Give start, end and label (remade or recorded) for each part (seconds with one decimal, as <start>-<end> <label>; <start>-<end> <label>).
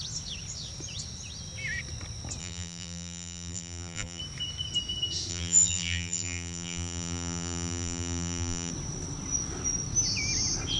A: 0.0-2.4 recorded; 2.4-4.2 remade; 4.2-5.3 recorded; 5.3-8.7 remade; 8.7-10.8 recorded